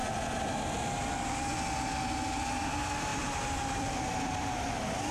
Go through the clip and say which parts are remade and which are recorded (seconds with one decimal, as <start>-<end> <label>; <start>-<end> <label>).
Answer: 0.0-0.6 remade; 0.6-3.1 recorded; 3.1-5.1 remade